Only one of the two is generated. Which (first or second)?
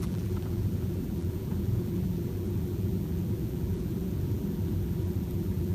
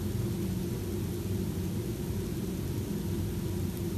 first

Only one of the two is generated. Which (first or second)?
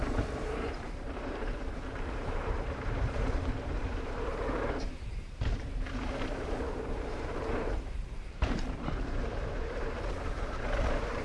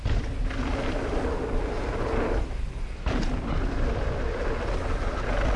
first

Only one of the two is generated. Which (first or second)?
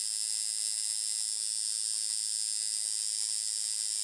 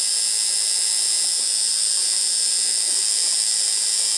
second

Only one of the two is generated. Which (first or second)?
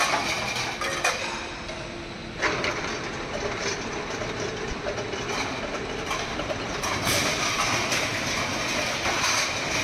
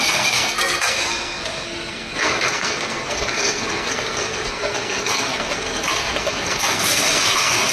second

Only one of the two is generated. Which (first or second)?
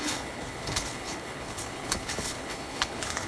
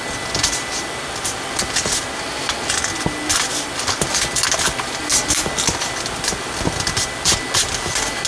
first